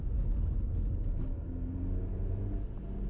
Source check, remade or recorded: recorded